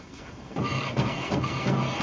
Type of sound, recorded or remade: remade